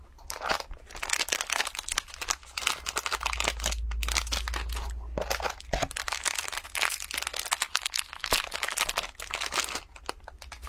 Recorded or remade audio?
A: recorded